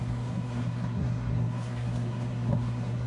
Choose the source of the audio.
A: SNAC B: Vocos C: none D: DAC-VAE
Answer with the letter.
A